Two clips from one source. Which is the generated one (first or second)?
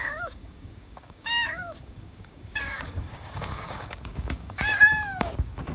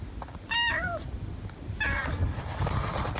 first